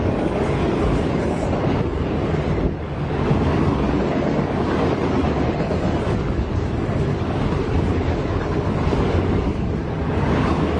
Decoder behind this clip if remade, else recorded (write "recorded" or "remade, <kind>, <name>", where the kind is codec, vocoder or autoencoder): remade, codec, DAC